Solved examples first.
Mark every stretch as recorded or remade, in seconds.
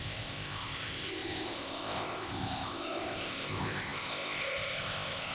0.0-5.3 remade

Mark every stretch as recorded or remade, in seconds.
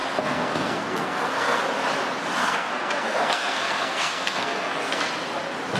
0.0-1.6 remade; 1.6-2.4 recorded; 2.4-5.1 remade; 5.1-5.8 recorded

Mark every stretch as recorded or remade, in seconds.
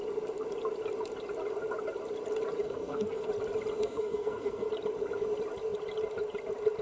0.0-2.6 recorded; 2.6-3.3 remade; 3.3-3.8 recorded; 3.8-4.7 remade; 4.7-6.8 recorded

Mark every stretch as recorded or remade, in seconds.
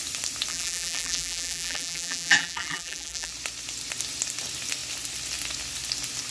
0.0-0.5 recorded; 0.5-3.3 remade; 3.3-6.3 recorded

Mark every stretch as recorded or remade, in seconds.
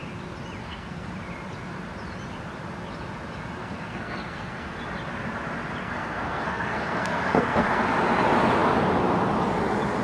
0.0-0.6 recorded; 0.6-1.1 remade; 1.1-3.6 recorded; 3.6-4.8 remade; 4.8-5.8 recorded; 5.8-7.8 remade; 7.8-10.0 recorded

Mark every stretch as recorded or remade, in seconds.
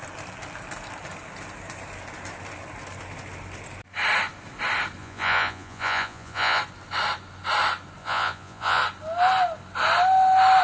0.0-5.0 recorded; 5.0-6.6 remade; 6.6-8.0 recorded; 8.0-8.8 remade; 8.8-10.6 recorded